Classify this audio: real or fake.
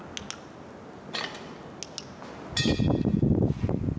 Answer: real